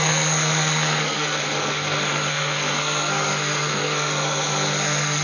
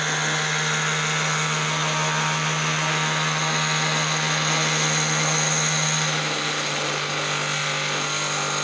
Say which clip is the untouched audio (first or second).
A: second